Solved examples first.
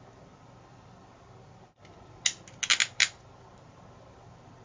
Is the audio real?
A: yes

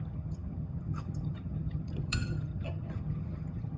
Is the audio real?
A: no